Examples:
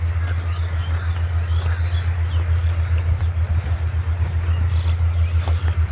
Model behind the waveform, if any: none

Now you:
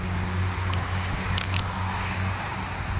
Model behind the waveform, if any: codec, DAC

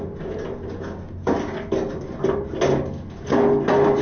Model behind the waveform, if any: none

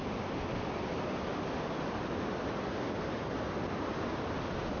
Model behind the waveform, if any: none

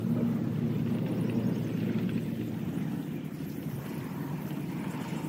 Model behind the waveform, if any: none